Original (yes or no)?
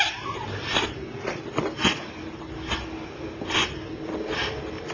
yes